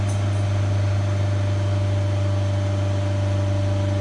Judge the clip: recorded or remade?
recorded